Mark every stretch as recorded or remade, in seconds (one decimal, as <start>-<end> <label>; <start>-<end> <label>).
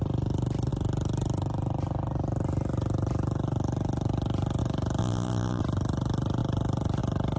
0.0-5.0 recorded; 5.0-5.6 remade; 5.6-7.4 recorded